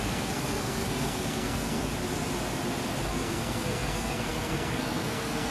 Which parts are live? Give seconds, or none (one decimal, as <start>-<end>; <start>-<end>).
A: 1.9-3.0